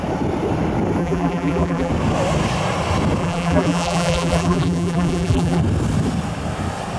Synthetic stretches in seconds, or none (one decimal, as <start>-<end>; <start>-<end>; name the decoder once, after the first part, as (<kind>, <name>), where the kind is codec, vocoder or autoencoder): 1.0-1.9 (vocoder, BigVGAN v2); 3.2-5.6